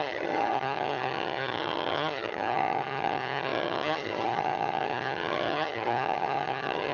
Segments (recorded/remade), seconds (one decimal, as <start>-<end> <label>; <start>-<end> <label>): 0.0-6.9 remade